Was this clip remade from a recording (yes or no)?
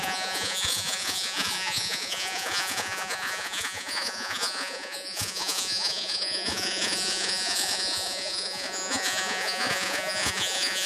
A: yes